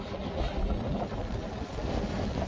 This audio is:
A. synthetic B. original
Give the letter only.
B